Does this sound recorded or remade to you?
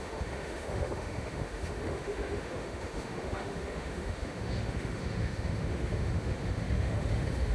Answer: remade